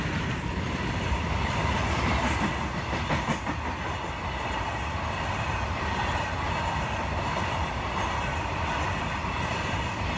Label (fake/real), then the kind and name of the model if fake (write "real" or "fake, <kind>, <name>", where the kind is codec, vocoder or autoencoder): real